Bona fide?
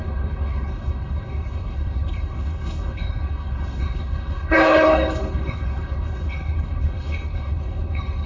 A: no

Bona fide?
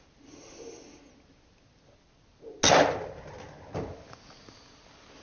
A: yes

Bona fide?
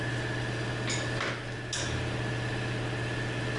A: yes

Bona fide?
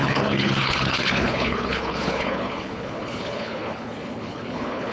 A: no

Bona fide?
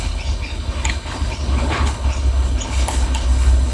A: no